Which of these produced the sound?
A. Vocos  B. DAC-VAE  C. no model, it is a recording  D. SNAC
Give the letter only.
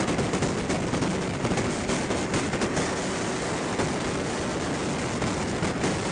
C